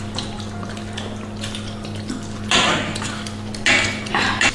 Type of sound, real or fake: real